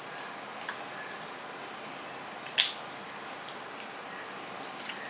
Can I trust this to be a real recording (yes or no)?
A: yes